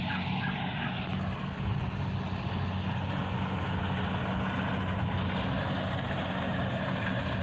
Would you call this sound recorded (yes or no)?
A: yes